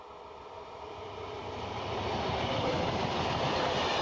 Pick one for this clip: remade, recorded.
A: recorded